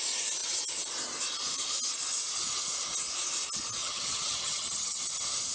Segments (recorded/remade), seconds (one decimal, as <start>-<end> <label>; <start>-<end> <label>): 0.0-3.8 recorded; 3.8-5.0 remade; 5.0-5.5 recorded